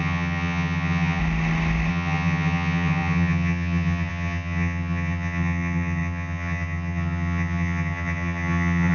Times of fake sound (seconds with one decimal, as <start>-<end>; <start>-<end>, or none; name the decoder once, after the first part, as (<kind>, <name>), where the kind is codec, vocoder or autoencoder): 0.0-1.2 (vocoder, HiFi-GAN); 1.9-8.9